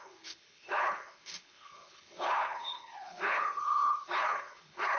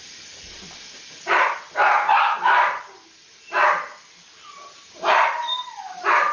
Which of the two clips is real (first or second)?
second